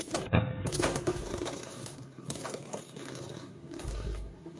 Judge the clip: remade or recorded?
remade